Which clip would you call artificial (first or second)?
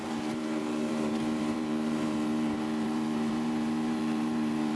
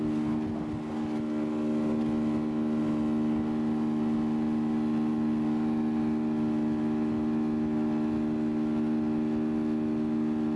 first